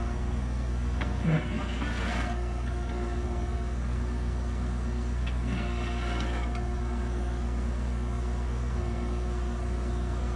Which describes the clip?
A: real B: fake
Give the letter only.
B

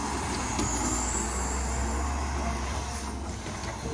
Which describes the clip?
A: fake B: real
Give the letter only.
B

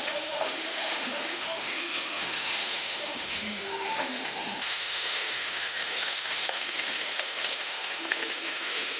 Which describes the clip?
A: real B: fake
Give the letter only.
B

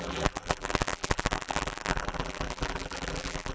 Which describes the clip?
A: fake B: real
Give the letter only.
A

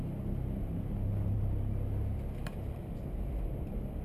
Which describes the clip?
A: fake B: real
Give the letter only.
B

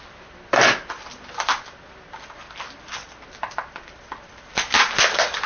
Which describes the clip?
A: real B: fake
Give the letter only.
A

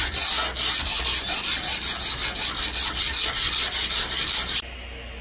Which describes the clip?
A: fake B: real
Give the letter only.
B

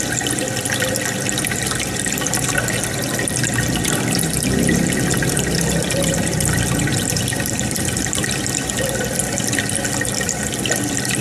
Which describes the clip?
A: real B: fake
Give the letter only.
B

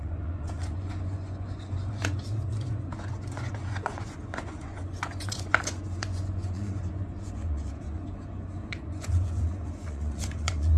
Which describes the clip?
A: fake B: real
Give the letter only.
A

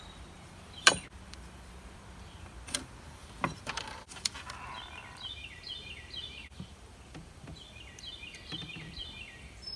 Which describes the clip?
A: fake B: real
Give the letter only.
A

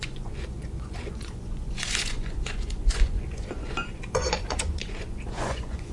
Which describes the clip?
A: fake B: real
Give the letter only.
A